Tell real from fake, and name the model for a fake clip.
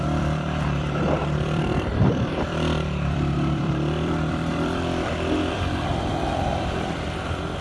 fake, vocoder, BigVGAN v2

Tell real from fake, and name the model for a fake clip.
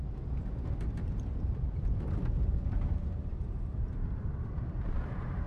fake, vocoder, BigVGAN v2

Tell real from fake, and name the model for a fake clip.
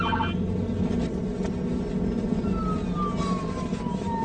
real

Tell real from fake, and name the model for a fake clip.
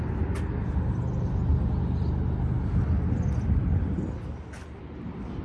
real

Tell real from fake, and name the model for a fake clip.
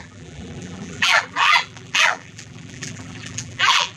fake, vocoder, BigVGAN v2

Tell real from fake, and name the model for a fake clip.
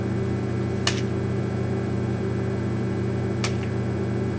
real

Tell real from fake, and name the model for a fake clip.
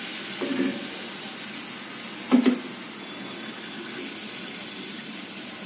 real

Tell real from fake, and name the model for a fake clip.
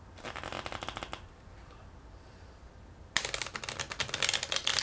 real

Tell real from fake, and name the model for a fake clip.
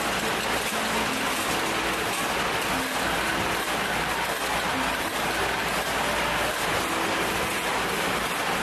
real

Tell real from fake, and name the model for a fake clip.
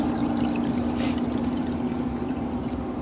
fake, vocoder, BigVGAN v2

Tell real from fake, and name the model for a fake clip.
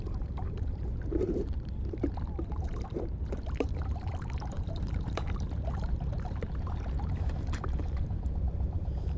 fake, vocoder, BigVGAN v2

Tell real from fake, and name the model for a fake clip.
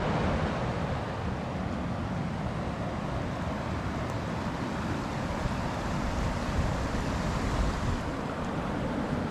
real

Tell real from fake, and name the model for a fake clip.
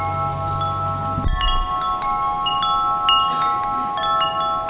real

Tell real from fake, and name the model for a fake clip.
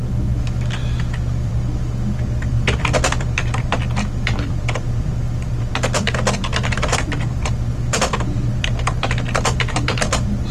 fake, vocoder, BigVGAN v2